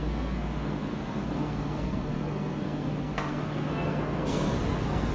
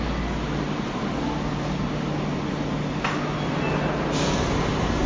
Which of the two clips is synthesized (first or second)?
first